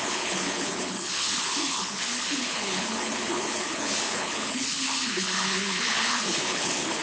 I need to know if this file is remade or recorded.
remade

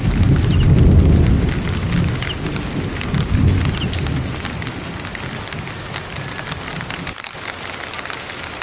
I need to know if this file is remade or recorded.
recorded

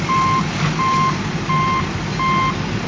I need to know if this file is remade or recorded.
recorded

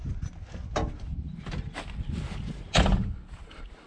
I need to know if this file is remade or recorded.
recorded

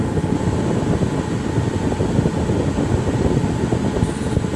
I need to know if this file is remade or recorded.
recorded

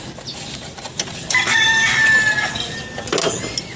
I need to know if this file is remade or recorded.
recorded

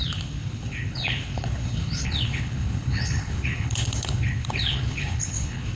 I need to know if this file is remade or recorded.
remade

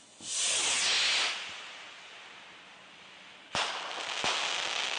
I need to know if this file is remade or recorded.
recorded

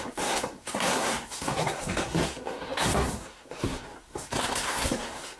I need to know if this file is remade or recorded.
remade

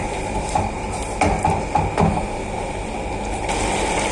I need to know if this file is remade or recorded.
recorded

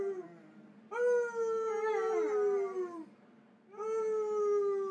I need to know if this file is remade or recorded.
recorded